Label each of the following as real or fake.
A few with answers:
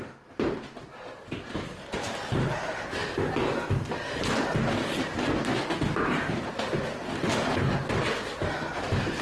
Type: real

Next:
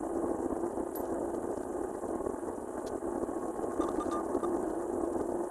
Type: real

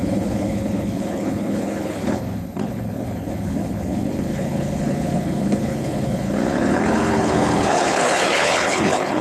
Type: fake